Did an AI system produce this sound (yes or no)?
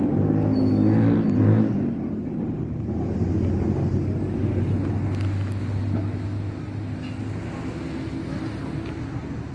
no